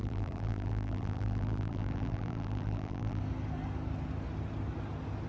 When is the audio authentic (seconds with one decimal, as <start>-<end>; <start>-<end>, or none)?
3.2-5.3